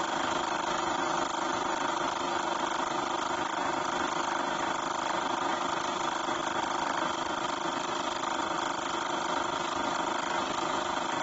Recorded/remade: remade